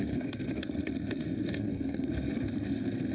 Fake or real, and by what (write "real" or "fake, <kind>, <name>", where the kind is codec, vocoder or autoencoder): fake, codec, SNAC